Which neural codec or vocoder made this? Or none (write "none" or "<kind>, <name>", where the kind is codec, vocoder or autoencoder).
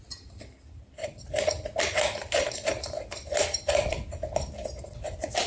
none